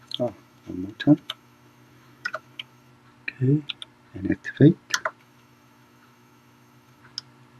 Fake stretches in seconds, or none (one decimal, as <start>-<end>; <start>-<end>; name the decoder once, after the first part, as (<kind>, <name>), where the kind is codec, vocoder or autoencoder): 0.0-2.9 (autoencoder, DAC-VAE); 5.2-7.0